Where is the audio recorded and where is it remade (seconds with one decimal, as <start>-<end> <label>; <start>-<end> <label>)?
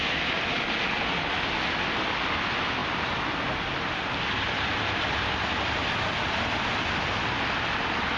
0.0-8.2 recorded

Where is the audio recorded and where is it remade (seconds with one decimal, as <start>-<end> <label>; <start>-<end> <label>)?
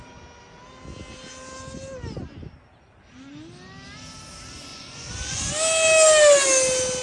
0.0-4.7 recorded; 4.7-5.5 remade; 5.5-7.0 recorded